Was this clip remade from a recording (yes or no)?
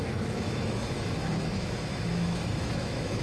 yes